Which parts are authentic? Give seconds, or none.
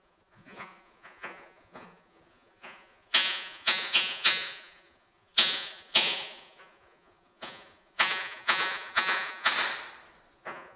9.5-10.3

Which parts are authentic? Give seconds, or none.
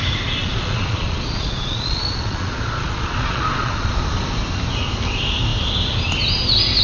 0.0-0.4; 4.0-6.8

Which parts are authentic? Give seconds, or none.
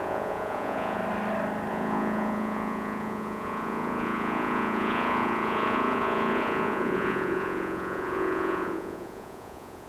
1.0-1.7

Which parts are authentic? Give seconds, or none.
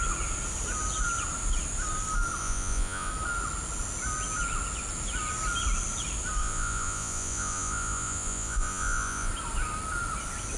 0.0-2.4; 3.1-6.4; 9.3-10.6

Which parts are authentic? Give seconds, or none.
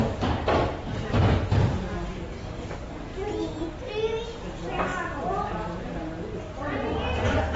0.0-7.6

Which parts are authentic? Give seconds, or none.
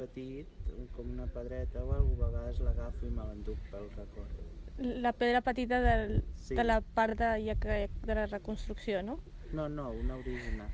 0.0-10.7